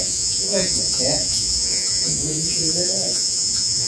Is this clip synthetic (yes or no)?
yes